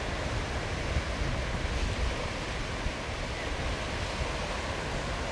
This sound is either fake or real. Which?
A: real